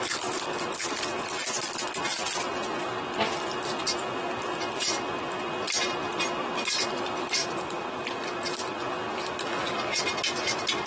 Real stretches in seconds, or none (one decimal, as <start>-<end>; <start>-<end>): 0.0-10.9